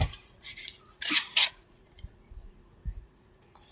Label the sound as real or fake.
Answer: fake